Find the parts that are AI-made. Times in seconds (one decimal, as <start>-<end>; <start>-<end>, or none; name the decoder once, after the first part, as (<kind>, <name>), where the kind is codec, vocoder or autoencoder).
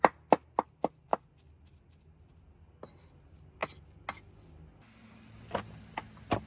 none